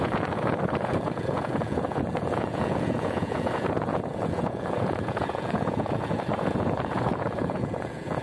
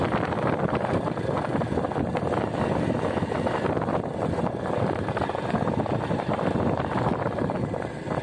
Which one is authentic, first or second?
second